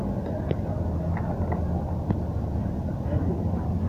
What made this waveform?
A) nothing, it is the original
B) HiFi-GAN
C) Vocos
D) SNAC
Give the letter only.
A